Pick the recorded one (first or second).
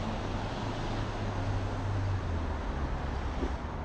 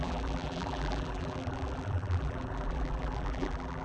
first